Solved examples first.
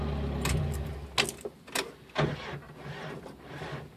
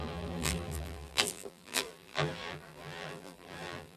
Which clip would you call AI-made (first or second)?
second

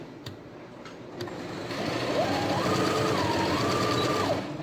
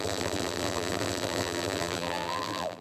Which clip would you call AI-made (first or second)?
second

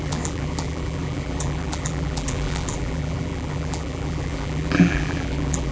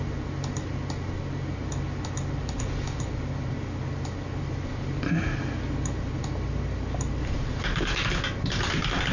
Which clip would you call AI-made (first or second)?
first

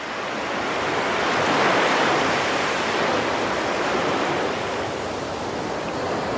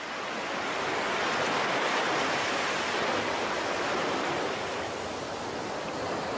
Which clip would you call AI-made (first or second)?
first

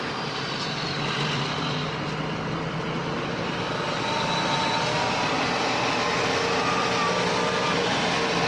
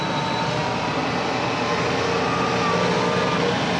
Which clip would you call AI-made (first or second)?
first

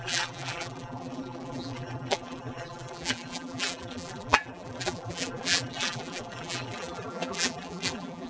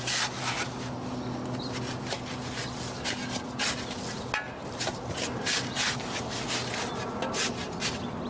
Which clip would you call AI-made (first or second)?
first